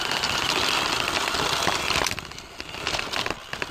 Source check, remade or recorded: recorded